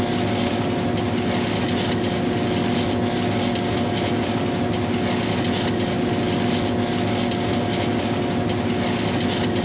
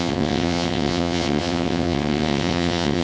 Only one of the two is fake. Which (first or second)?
second